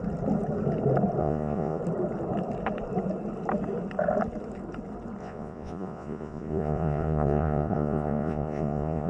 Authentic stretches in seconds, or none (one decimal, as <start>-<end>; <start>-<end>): 0.0-1.2; 1.8-5.2